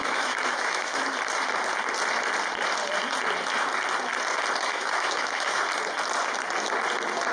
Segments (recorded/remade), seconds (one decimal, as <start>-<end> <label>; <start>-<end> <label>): 0.0-1.0 remade; 1.0-4.7 recorded; 4.7-5.6 remade; 5.6-7.3 recorded